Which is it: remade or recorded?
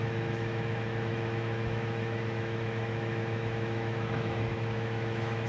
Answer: remade